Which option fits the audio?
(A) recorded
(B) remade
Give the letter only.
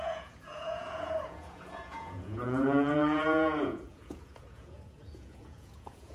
B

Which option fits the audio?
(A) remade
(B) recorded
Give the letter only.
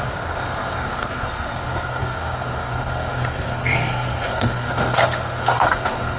A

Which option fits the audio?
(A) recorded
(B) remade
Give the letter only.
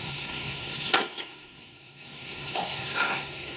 B